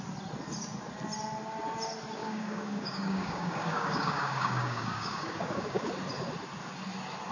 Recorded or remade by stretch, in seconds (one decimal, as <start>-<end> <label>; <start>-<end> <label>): 0.0-2.2 recorded; 2.2-5.9 remade; 5.9-7.3 recorded